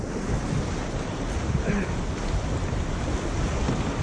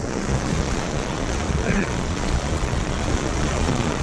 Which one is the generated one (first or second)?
second